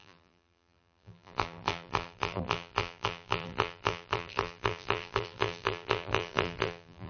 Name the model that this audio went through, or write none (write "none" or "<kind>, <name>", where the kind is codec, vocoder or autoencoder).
vocoder, BigVGAN v2